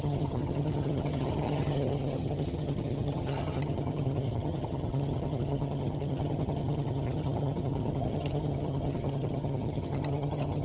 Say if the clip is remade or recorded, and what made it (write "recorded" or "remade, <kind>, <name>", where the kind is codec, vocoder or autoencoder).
remade, vocoder, HiFi-GAN